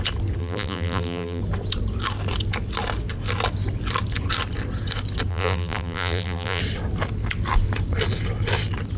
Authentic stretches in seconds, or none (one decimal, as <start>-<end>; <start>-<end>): 0.0-0.4; 1.4-5.3; 6.6-9.0